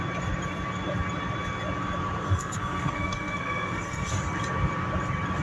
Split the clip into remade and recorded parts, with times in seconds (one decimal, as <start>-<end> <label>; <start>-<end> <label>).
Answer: 0.0-2.2 recorded; 2.2-4.2 remade; 4.2-5.4 recorded